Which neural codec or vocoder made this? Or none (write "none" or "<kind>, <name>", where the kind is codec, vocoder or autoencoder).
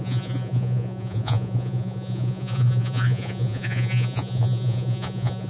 vocoder, Vocos